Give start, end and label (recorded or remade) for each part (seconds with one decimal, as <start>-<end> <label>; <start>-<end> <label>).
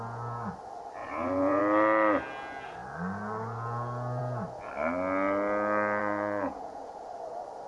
0.0-1.0 recorded; 1.0-1.6 remade; 1.6-6.0 recorded; 6.0-7.1 remade; 7.1-7.7 recorded